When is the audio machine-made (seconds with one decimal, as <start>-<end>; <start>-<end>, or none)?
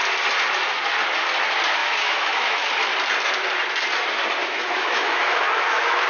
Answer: 1.8-2.7; 4.4-6.1